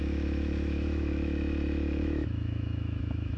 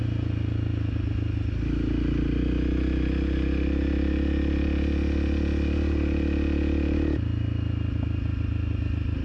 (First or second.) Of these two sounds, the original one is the second